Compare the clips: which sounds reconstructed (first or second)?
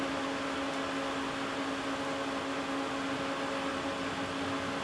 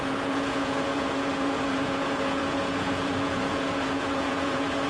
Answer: second